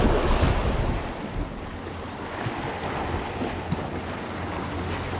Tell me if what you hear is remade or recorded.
recorded